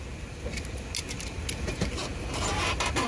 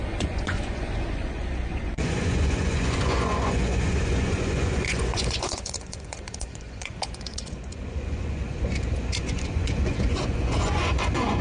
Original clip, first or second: first